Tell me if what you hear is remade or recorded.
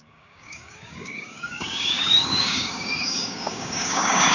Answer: remade